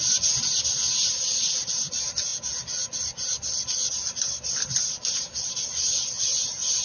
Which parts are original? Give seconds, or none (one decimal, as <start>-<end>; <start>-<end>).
0.0-6.8